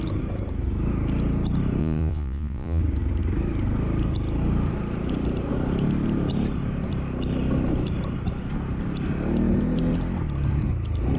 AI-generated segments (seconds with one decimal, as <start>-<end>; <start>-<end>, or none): 1.8-2.8